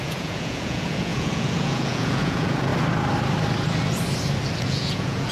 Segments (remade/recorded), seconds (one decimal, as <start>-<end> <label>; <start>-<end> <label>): 0.0-2.7 remade; 2.7-4.6 recorded; 4.6-5.3 remade